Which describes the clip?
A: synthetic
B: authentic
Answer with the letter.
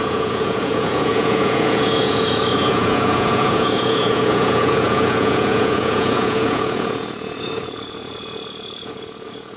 A